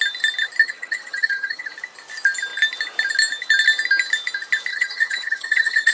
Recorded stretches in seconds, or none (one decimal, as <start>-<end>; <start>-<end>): 0.0-0.6; 1.7-4.7